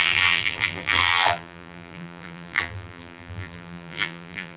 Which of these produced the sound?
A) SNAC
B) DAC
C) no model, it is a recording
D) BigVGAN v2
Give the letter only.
D